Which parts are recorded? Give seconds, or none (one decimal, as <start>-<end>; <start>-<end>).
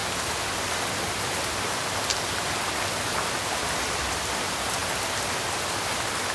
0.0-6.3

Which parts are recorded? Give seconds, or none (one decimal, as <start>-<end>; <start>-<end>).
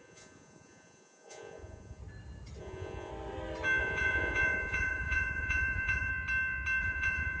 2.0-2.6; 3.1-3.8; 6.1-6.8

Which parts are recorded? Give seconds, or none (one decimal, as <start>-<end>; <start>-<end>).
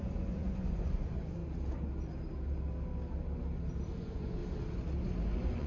1.4-4.0; 4.4-5.2